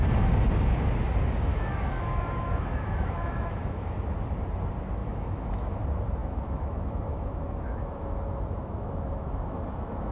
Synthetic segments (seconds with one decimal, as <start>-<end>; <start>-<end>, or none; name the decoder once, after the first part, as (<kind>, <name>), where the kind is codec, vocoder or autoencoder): 1.5-4.0 (autoencoder, DAC-VAE); 5.0-5.8; 6.2-10.1